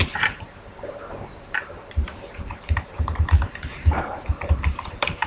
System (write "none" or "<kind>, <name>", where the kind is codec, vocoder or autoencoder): vocoder, BigVGAN v2